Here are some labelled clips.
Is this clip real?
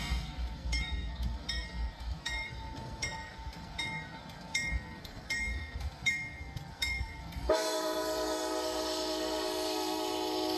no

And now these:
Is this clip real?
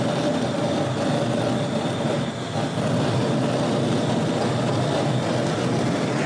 yes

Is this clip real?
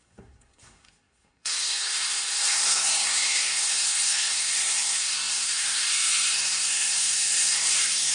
no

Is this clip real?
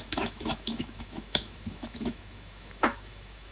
no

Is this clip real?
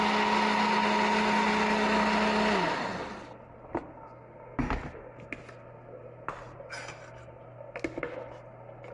yes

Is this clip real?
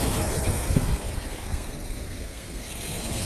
no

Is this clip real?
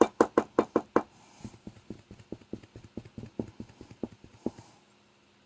yes